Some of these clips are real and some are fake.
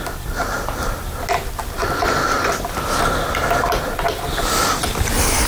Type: real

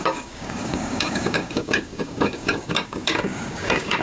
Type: fake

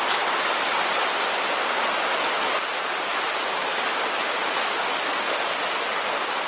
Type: real